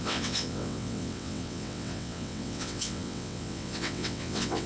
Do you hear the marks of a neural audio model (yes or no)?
yes